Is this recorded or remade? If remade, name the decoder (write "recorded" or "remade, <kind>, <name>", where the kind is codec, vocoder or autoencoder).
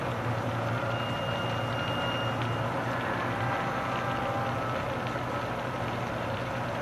recorded